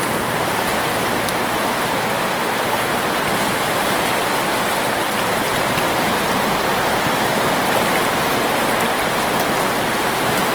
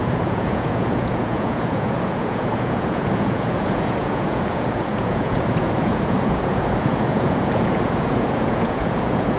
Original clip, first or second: first